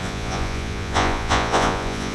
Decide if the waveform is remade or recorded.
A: remade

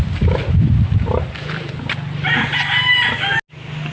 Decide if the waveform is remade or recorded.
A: recorded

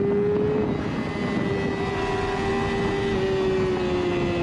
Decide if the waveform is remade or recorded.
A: recorded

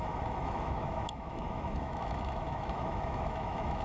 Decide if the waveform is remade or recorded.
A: remade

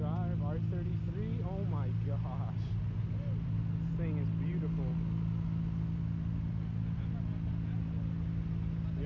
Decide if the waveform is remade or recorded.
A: recorded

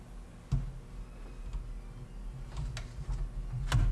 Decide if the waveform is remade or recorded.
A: recorded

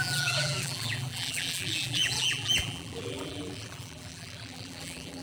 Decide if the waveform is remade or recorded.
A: remade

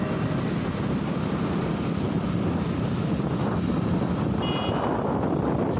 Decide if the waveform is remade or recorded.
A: recorded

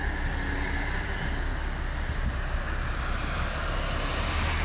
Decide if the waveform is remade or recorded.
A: recorded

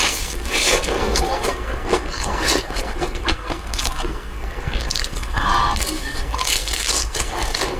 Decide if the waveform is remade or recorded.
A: remade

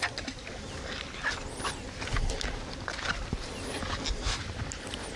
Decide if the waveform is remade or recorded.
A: recorded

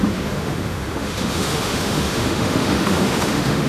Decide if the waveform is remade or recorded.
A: remade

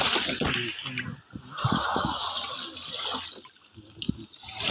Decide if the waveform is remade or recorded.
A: recorded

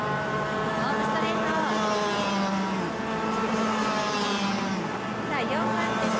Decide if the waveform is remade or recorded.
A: recorded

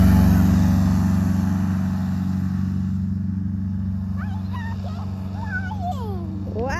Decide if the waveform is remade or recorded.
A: recorded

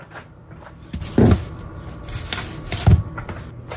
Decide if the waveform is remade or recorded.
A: recorded